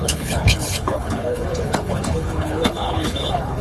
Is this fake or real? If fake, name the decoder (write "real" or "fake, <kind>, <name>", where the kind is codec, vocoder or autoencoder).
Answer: fake, codec, HILCodec